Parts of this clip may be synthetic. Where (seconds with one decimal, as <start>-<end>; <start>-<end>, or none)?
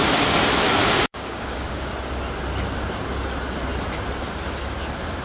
0.8-1.9